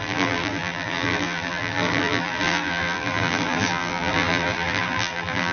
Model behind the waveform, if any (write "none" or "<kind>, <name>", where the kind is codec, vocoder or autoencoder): vocoder, BigVGAN v2